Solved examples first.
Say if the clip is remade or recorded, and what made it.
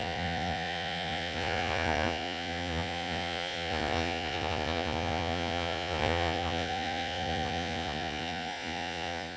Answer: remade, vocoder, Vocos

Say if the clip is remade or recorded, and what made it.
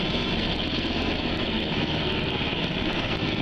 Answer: remade, codec, SNAC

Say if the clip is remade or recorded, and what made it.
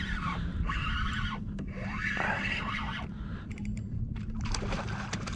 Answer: remade, vocoder, BigVGAN v2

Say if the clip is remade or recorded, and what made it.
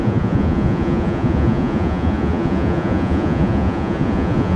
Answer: remade, vocoder, Vocos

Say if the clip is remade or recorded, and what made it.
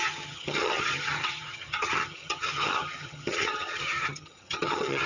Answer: remade, vocoder, HiFi-GAN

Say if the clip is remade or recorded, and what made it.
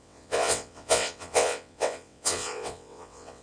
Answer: remade, vocoder, WaveNeXt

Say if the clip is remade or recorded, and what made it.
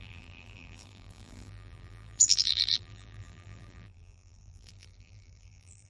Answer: remade, vocoder, BigVGAN v2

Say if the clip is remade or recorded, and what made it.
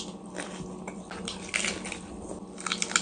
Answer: recorded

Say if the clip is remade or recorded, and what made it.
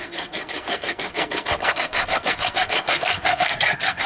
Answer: remade, codec, SNAC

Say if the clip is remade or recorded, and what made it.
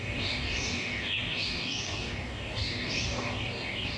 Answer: remade, codec, DAC